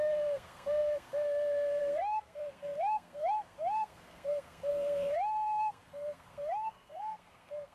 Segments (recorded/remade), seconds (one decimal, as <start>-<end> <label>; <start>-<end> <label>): 0.0-7.7 remade

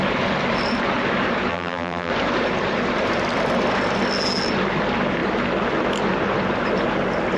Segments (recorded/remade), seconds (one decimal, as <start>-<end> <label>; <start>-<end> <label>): 0.0-1.5 recorded; 1.5-2.1 remade; 2.1-7.4 recorded

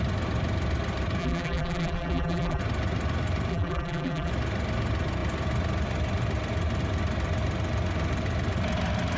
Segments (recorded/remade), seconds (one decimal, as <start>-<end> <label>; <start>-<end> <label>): 0.0-1.2 recorded; 1.2-2.6 remade; 2.6-3.5 recorded; 3.5-4.3 remade; 4.3-9.2 recorded

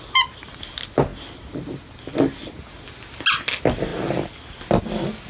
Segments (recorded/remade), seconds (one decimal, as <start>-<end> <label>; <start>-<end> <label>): 0.0-5.3 recorded

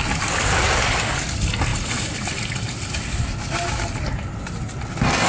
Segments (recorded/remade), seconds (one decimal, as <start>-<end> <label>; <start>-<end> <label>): 0.0-5.3 recorded

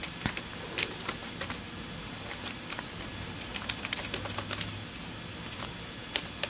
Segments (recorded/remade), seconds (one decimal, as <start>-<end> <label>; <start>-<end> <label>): 0.0-6.5 recorded

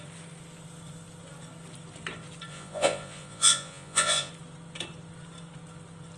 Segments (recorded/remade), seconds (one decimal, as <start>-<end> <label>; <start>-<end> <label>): 0.0-2.5 recorded; 2.5-4.3 remade; 4.3-6.2 recorded